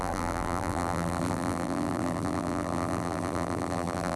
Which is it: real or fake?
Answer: fake